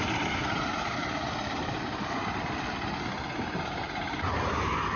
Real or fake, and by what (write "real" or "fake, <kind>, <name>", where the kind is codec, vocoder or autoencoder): real